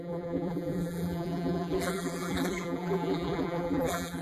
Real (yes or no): no